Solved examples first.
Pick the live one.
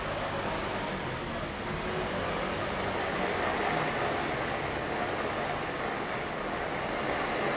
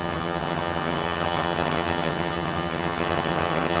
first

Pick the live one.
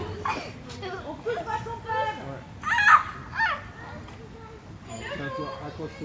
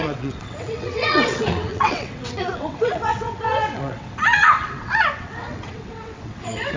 first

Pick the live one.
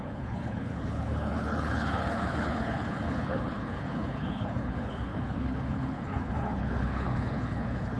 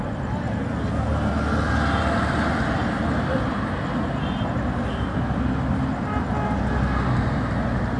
second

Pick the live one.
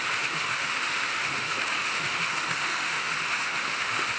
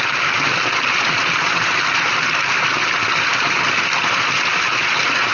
second